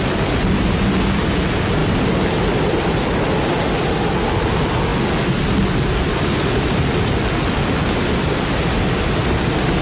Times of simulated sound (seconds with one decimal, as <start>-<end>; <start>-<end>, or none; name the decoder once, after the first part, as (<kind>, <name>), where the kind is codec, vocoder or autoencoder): none